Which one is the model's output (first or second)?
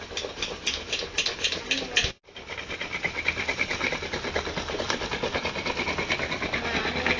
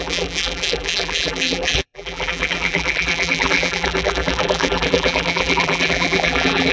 second